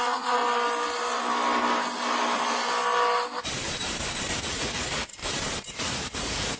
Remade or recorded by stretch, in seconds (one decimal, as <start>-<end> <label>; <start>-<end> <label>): 0.0-0.4 remade; 0.4-4.4 recorded; 4.4-5.1 remade; 5.1-5.7 recorded; 5.7-6.6 remade